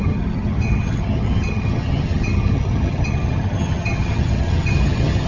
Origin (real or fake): fake